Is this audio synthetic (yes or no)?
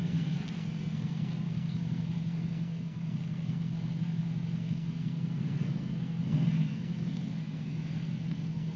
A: yes